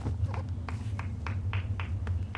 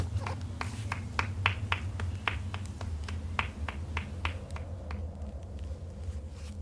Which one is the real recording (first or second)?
second